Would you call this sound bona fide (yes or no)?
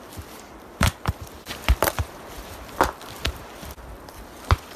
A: no